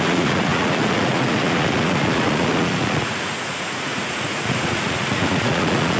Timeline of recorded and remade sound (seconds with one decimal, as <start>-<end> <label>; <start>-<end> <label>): 0.0-6.0 remade